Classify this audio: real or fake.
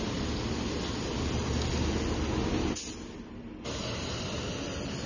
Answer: real